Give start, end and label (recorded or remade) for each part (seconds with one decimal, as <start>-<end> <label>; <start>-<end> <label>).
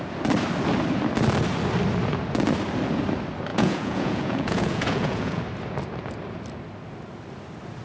0.0-3.5 recorded; 3.5-5.4 remade; 5.4-7.8 recorded